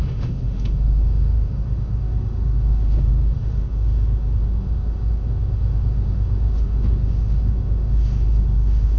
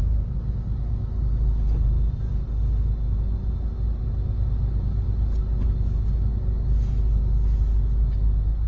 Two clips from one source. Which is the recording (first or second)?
second